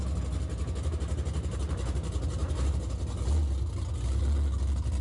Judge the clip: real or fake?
real